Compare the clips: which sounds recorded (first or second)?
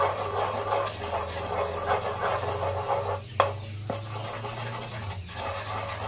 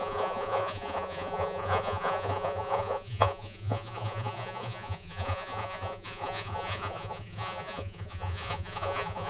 first